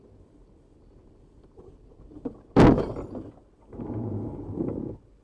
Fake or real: real